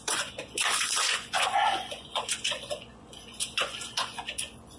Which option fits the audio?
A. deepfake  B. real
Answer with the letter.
A